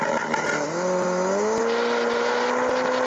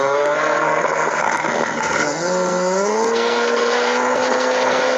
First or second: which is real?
first